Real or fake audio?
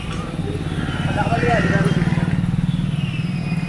real